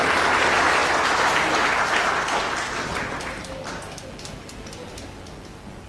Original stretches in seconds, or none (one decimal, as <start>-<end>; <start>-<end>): 0.0-5.9